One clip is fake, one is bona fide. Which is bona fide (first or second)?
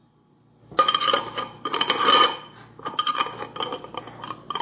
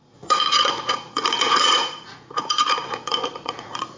first